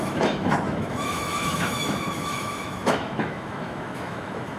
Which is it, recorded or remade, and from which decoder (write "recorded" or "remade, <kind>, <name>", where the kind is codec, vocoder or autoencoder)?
remade, autoencoder, DAC-VAE